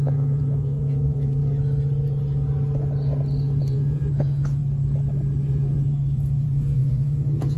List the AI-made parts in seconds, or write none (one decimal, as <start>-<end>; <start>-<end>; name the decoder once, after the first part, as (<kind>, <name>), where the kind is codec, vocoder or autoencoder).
0.0-1.4 (vocoder, Vocos); 3.6-4.6; 5.5-7.6